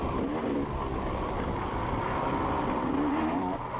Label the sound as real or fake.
real